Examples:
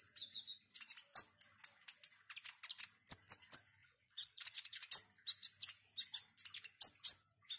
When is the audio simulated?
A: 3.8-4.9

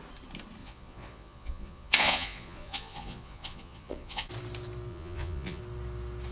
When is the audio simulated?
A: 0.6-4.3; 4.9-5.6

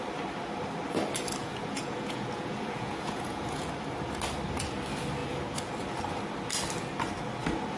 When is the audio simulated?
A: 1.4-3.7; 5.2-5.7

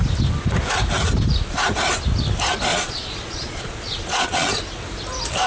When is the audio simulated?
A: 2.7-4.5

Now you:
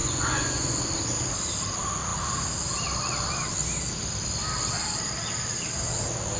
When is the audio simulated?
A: 0.0-0.8

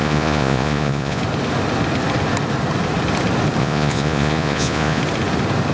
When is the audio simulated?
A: 0.0-1.2; 3.6-5.0

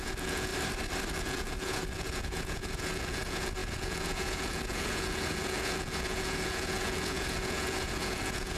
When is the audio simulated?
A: 0.0-0.5; 1.1-8.6